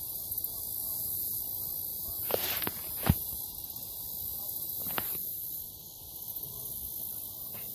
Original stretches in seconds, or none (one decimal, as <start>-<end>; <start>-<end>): 0.0-0.8; 1.4-1.9; 3.4-4.3; 5.6-7.7